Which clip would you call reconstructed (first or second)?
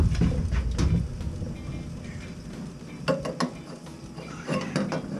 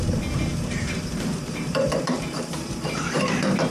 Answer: second